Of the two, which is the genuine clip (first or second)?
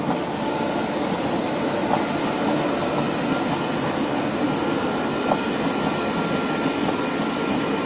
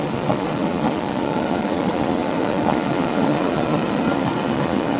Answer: first